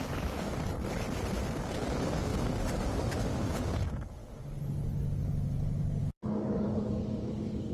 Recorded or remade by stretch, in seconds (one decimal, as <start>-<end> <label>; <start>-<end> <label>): 0.0-0.9 remade; 0.9-1.7 recorded; 1.7-4.2 remade; 4.2-6.0 recorded; 6.0-7.7 remade